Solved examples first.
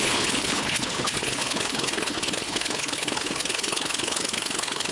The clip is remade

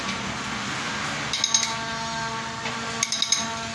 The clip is recorded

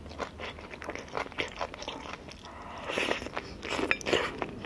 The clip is recorded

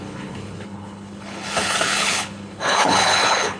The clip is remade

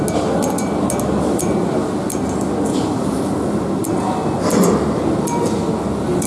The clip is recorded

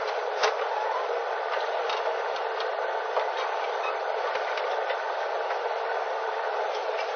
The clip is recorded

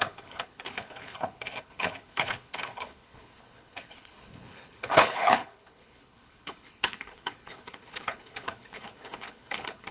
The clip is remade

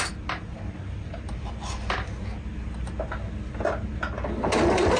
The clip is recorded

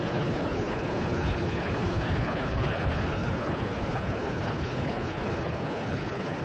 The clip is remade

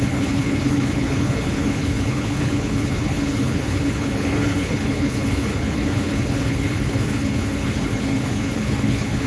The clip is remade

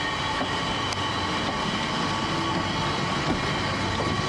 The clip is recorded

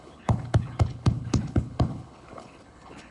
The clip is remade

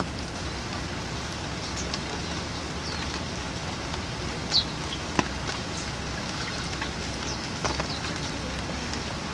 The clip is recorded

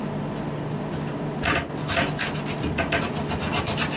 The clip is recorded